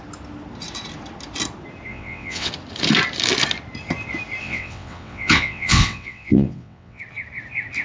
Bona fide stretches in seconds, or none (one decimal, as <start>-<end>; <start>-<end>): 0.0-1.9; 2.5-4.4; 7.0-7.8